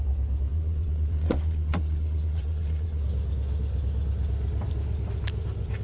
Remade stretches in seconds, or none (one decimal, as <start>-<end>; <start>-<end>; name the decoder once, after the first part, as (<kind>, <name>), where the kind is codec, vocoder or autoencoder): 0.5-3.0 (vocoder, WaveNeXt)